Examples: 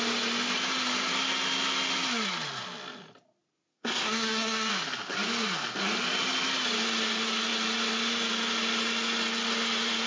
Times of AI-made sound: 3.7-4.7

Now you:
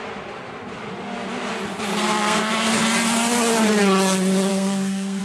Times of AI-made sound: 1.9-2.5; 4.5-5.2

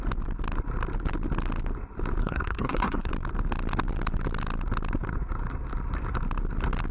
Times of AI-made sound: 2.2-3.1

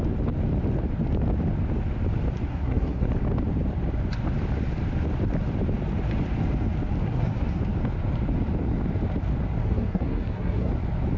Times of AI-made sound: 2.5-3.1; 7.0-7.6; 9.6-10.7

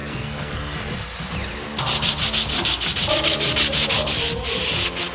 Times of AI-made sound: 0.0-0.5